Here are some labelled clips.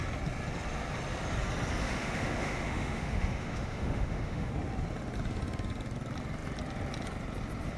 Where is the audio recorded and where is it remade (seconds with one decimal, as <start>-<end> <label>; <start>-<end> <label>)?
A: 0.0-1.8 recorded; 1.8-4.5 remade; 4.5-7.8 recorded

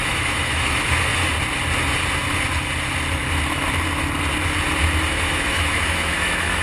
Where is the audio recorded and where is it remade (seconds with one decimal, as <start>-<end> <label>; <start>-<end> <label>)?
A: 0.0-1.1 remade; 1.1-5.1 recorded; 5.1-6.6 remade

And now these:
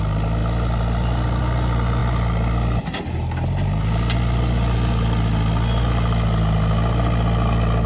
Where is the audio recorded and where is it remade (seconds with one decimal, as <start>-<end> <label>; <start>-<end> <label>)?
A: 0.0-7.9 recorded

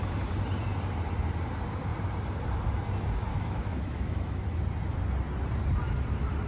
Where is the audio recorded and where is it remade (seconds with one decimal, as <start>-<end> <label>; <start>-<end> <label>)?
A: 0.0-3.3 recorded; 3.3-4.4 remade; 4.4-6.5 recorded

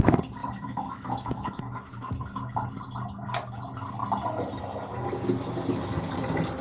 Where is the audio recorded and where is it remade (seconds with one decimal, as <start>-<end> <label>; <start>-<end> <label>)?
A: 0.0-0.4 recorded; 0.4-2.1 remade; 2.1-6.6 recorded

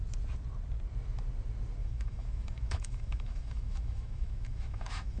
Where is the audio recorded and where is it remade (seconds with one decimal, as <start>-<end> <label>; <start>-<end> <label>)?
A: 0.0-1.8 recorded; 1.8-5.2 remade